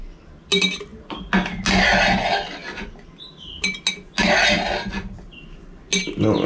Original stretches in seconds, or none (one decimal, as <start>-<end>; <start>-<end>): 0.0-6.5